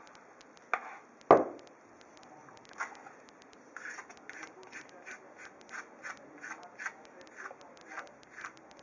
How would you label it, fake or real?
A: real